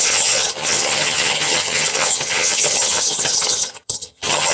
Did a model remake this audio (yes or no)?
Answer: yes